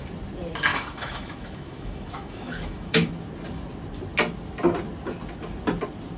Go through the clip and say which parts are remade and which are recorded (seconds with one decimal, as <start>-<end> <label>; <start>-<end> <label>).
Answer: 0.0-0.7 recorded; 0.7-3.1 remade; 3.1-6.2 recorded